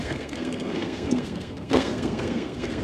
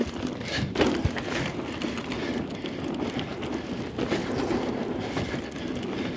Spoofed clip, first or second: first